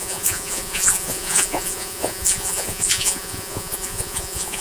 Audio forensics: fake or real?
fake